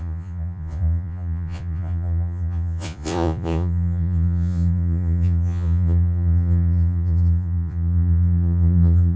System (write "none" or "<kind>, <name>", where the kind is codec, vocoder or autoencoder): vocoder, Vocos